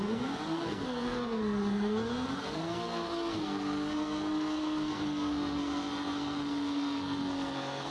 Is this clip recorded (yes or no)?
no